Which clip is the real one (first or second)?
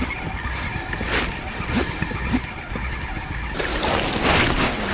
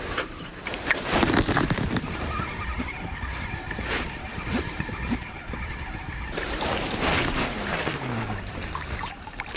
first